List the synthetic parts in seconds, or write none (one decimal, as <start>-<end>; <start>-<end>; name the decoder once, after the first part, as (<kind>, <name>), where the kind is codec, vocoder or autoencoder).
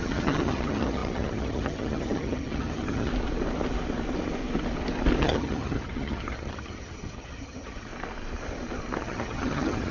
0.0-3.1 (vocoder, HiFi-GAN); 5.2-7.9; 9.0-9.9